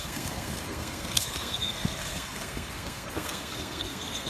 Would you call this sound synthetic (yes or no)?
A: yes